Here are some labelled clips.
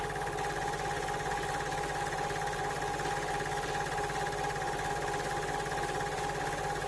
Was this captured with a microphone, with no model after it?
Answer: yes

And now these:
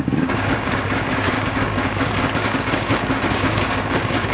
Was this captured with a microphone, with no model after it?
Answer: no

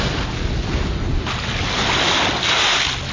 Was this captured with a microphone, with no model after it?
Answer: yes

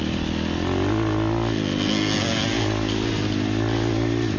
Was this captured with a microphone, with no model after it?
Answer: yes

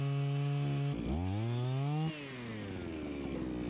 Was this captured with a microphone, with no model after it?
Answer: yes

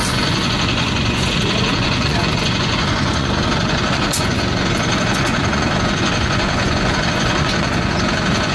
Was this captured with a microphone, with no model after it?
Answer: no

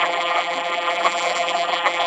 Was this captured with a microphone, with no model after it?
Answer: no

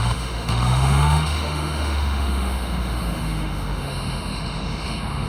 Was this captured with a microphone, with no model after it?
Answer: no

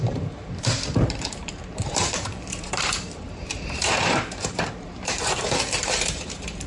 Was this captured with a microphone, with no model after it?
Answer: no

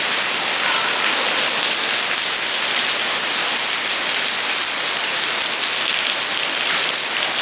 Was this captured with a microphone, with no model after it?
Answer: yes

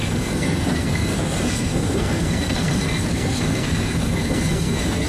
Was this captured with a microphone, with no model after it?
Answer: no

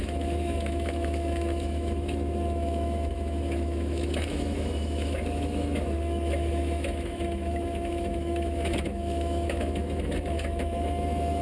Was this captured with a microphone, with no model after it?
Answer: no